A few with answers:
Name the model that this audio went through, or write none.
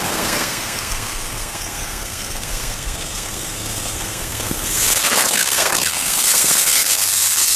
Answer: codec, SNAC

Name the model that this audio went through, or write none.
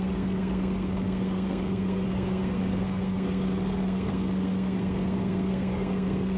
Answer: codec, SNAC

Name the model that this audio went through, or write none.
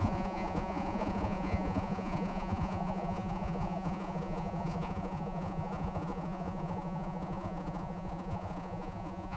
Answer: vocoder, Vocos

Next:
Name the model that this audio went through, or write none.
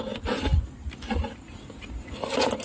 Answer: none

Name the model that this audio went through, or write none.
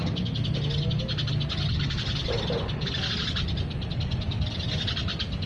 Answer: none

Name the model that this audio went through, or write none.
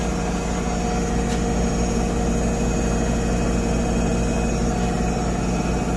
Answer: none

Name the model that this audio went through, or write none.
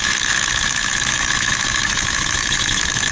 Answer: autoencoder, DAC-VAE